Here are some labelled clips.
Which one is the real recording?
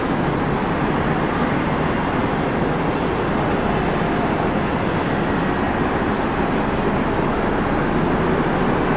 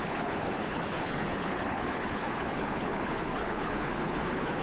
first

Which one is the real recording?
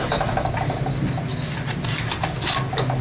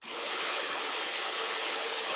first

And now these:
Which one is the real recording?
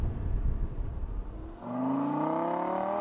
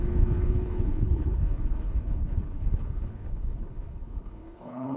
first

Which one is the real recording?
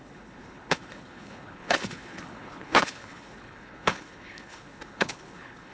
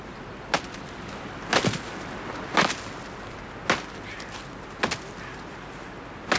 second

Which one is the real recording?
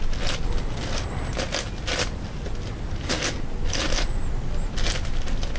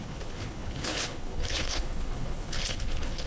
first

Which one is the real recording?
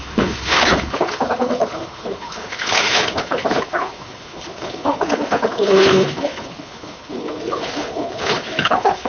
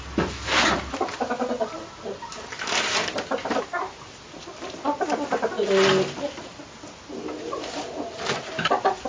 second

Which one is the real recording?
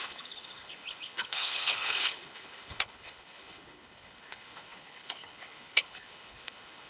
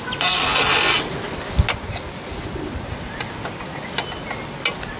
second